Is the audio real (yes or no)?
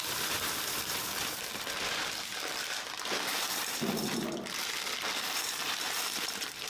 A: no